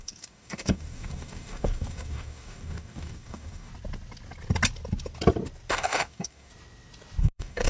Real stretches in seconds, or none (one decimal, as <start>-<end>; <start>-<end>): 3.7-5.7; 6.5-7.2